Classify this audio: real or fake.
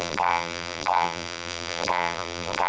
fake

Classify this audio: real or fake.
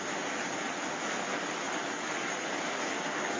real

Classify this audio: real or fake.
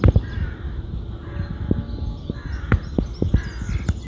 real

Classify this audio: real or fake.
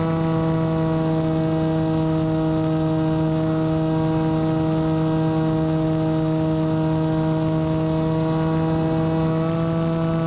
real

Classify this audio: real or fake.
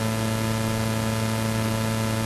real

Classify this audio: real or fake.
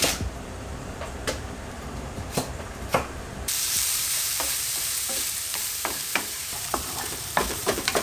fake